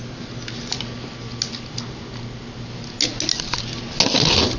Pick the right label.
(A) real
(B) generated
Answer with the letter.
A